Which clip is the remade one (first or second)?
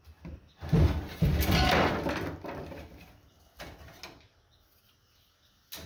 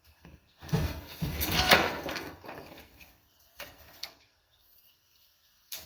second